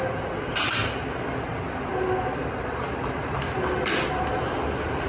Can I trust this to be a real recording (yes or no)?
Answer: yes